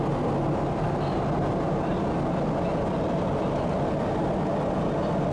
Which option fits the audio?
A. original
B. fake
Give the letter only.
A